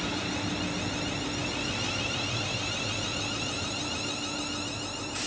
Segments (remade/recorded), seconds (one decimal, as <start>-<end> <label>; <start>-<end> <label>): 0.0-5.3 recorded